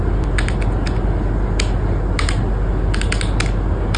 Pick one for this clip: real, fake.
real